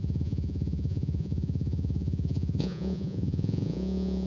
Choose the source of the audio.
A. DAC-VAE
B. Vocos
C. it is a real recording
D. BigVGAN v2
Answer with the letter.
B